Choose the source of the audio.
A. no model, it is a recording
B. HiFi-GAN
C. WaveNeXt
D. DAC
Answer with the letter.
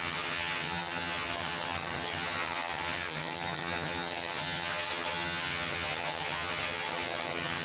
B